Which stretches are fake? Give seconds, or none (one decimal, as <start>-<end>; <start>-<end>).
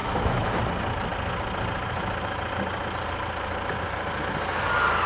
0.0-0.6